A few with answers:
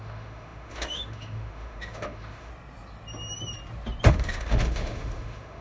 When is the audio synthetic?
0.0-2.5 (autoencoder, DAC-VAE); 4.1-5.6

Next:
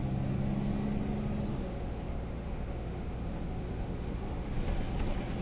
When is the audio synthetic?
1.5-4.5 (autoencoder, DAC-VAE)

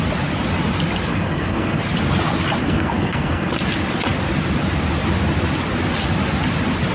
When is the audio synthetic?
1.1-1.8 (codec, SNAC); 2.6-3.5

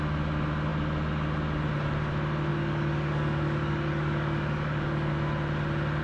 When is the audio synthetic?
2.5-5.1 (codec, DAC)

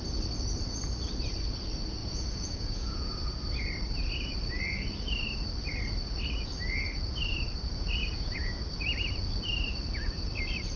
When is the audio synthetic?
2.0-3.4 (vocoder, Vocos); 8.0-8.5

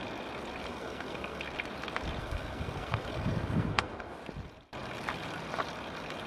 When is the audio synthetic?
0.7-1.4 (codec, SNAC); 2.2-4.2

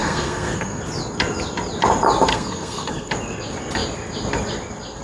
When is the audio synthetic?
0.0-0.8 (codec, SNAC); 2.3-3.1

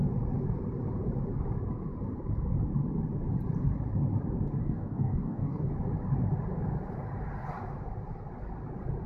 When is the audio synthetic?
4.6-5.7 (codec, DAC)